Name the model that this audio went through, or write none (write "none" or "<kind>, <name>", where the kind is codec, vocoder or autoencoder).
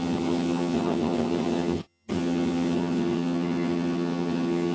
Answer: vocoder, HiFi-GAN